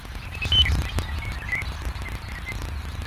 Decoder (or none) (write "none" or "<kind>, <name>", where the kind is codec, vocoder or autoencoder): none